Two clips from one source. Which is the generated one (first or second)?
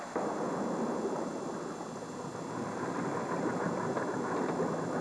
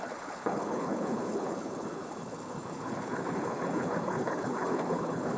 second